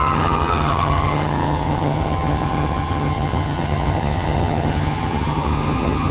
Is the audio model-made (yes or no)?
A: yes